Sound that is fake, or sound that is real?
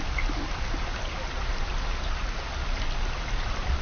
real